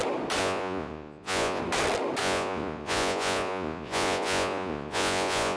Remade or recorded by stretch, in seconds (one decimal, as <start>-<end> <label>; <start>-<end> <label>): 0.0-0.4 recorded; 0.4-1.6 remade; 1.6-2.2 recorded; 2.2-5.6 remade